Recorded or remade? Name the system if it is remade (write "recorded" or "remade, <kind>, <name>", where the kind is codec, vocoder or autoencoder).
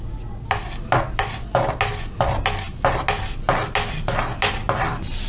recorded